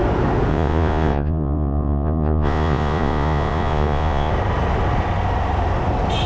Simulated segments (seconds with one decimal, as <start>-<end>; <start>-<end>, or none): 0.5-4.3